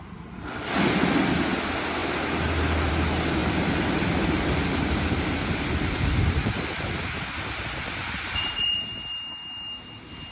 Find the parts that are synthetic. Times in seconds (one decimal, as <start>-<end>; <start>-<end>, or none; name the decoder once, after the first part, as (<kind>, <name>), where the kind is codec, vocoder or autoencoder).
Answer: 3.4-6.8 (vocoder, BigVGAN v2); 8.0-9.1